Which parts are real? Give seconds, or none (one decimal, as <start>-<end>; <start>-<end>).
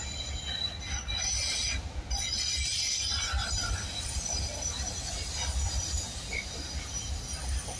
0.0-7.8